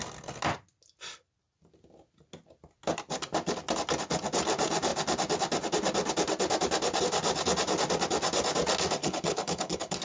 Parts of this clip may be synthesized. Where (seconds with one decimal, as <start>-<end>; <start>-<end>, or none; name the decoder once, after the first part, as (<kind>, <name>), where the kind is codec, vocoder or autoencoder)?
9.0-10.0 (codec, HILCodec)